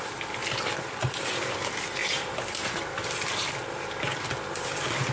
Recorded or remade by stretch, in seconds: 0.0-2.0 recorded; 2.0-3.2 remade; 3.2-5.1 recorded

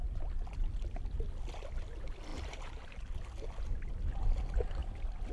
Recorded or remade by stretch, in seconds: 0.0-2.3 recorded; 2.3-3.1 remade; 3.1-5.3 recorded